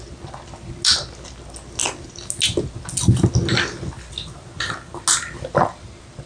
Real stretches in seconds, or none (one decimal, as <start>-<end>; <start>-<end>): 0.0-6.3